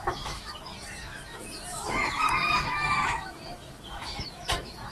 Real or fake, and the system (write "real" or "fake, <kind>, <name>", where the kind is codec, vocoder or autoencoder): fake, autoencoder, DAC-VAE